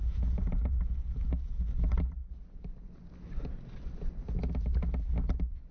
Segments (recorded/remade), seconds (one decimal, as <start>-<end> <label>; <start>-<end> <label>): 0.0-0.8 remade; 0.8-5.7 recorded